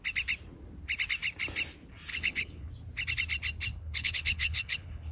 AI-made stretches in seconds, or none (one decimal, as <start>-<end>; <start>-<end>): 2.1-2.7; 3.7-5.1